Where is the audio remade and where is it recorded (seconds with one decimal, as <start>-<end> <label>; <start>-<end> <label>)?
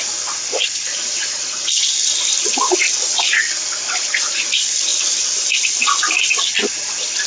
0.0-7.3 recorded